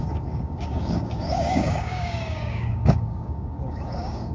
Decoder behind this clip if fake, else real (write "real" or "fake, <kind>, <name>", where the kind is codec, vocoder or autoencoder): fake, codec, DAC